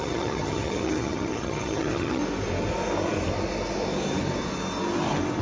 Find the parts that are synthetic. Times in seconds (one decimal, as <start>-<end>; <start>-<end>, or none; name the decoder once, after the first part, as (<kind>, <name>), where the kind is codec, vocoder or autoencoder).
0.0-2.2 (vocoder, HiFi-GAN)